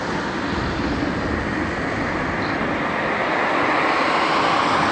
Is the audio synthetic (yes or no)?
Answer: no